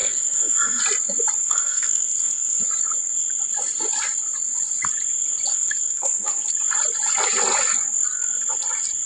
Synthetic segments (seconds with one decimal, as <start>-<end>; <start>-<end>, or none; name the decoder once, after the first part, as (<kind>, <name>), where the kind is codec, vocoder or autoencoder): 0.0-0.8 (codec, SNAC); 1.4-2.6; 5.5-6.5